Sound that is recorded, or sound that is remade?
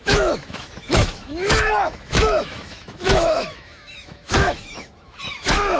remade